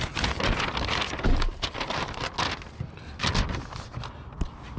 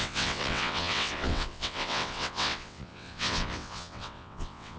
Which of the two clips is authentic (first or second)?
first